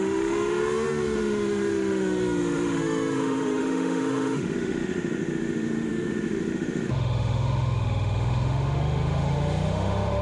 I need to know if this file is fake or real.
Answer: fake